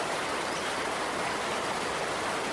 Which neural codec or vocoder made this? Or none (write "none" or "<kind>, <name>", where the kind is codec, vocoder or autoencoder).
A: none